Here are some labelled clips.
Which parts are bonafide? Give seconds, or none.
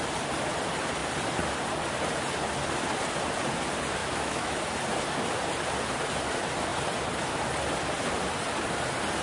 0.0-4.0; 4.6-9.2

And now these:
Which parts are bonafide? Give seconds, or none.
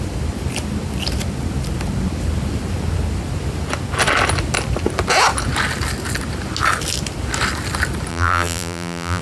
0.0-8.1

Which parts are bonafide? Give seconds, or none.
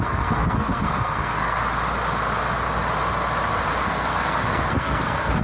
1.6-3.8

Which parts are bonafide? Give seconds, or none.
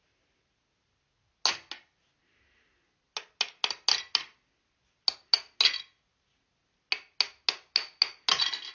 0.0-8.7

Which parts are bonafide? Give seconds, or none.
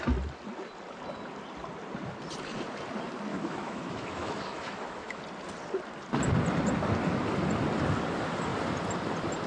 0.0-3.3; 5.2-9.5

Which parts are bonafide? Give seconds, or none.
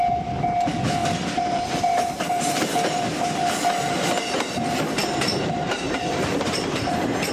0.0-1.0; 3.5-5.0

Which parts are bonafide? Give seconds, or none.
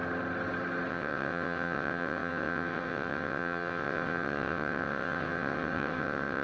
0.0-0.9